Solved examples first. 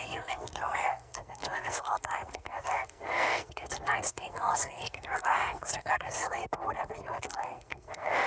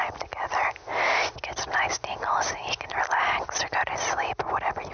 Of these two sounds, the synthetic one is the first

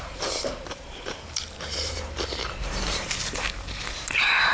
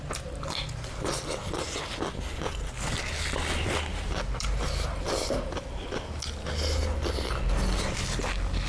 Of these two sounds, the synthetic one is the first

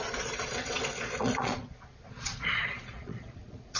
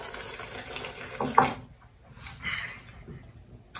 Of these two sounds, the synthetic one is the first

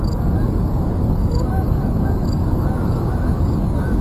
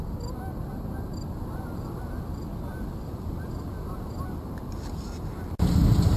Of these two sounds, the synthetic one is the first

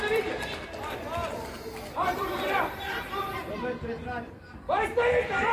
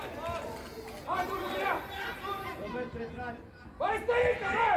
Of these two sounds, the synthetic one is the first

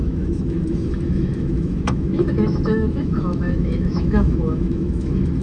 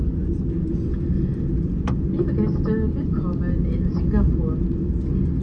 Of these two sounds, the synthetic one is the first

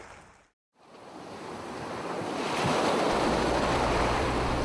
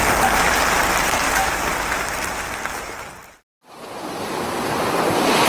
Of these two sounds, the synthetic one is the first